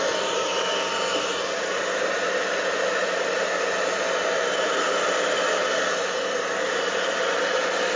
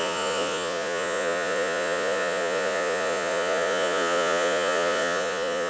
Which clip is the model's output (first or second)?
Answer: second